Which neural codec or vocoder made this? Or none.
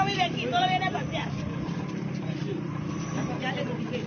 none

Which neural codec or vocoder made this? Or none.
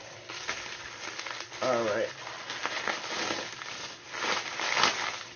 none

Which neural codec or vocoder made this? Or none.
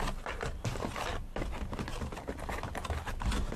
none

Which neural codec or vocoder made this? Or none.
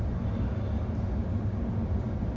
none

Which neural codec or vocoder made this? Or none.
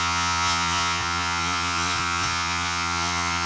vocoder, Vocos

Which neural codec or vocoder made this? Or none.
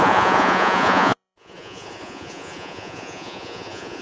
vocoder, Vocos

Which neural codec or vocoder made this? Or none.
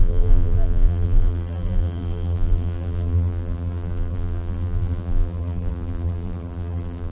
vocoder, BigVGAN v2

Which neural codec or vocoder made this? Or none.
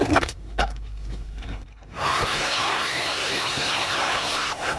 codec, SNAC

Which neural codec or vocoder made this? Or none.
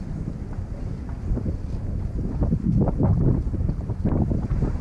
none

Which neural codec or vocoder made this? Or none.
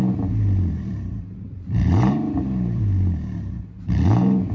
vocoder, BigVGAN v2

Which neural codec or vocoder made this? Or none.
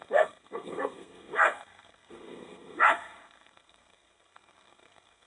codec, SNAC